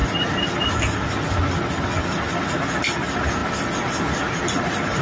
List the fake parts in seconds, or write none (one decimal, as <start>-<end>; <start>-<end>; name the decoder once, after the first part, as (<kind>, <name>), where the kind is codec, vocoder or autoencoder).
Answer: none